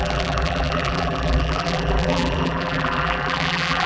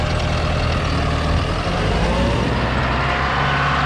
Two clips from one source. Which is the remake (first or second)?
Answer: first